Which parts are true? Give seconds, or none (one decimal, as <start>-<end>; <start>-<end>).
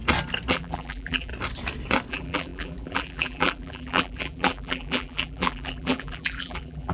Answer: 0.0-0.5; 1.3-2.1